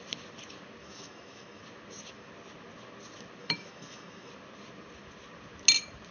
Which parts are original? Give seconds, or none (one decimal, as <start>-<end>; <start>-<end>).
0.0-0.8; 1.6-3.4; 4.3-6.1